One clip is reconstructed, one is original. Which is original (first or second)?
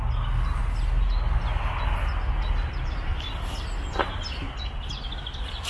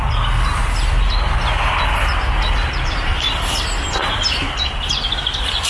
first